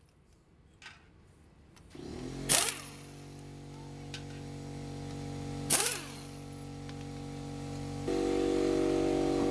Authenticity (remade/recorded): recorded